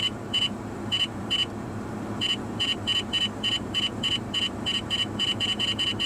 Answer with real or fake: fake